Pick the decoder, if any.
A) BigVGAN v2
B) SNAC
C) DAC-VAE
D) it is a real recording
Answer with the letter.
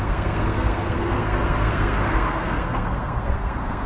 B